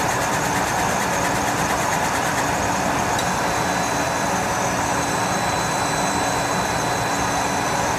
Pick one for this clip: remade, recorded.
recorded